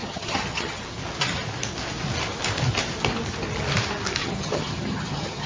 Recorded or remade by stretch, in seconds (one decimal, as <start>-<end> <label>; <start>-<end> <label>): 0.0-0.8 remade; 0.8-4.2 recorded; 4.2-5.5 remade